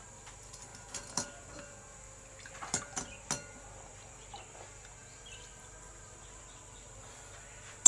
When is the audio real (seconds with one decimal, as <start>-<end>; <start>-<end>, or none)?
0.0-7.9